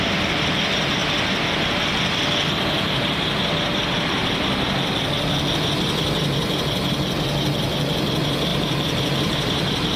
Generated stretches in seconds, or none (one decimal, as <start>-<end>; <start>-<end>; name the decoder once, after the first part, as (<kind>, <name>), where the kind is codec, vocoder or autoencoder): 8.5-10.0 (vocoder, BigVGAN v2)